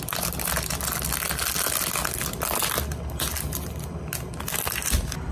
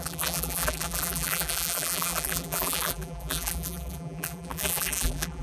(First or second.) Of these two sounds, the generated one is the second